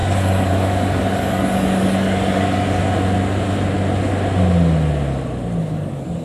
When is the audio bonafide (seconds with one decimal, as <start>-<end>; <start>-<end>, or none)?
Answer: 2.8-5.6